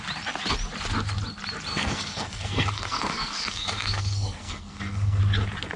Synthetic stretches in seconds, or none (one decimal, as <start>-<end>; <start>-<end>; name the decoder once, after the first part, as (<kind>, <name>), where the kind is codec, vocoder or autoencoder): 1.7-5.2 (codec, SNAC)